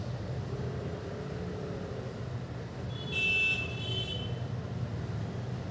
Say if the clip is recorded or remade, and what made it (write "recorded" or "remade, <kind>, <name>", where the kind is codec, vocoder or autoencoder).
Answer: recorded